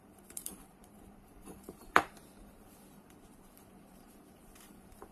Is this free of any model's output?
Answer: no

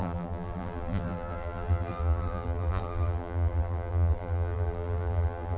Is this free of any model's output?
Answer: no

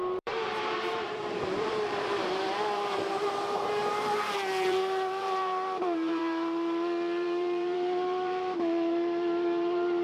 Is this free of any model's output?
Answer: no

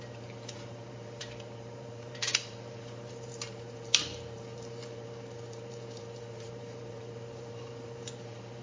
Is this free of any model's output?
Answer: no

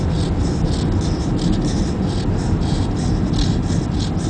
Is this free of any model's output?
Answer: yes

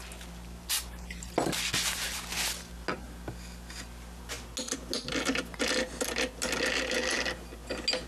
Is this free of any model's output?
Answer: yes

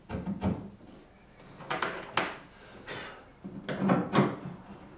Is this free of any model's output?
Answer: yes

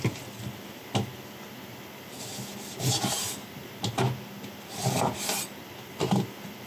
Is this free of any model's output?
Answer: yes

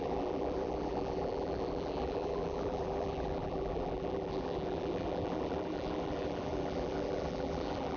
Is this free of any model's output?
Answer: no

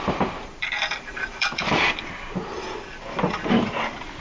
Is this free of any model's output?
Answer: no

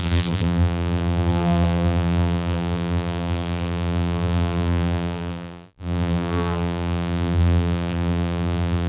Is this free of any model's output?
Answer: no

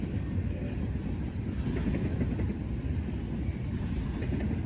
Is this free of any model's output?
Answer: yes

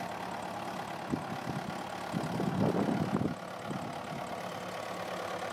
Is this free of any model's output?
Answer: yes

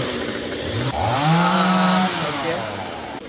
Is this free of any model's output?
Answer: no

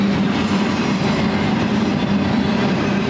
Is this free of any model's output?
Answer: no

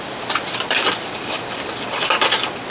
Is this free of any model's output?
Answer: yes